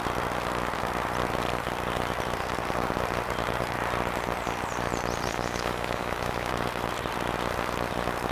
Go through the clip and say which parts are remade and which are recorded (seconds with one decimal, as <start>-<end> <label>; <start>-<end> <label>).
0.0-5.3 recorded; 5.3-6.5 remade; 6.5-8.3 recorded